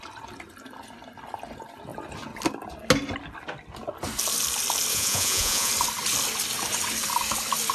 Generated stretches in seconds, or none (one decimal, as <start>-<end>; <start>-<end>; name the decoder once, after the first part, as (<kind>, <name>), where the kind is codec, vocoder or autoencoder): 4.9-5.7 (vocoder, Vocos)